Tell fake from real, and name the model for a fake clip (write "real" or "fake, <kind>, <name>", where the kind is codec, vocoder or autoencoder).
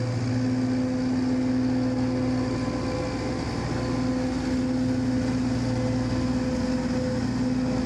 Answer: real